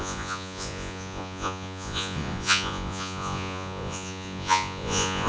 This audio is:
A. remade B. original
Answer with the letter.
A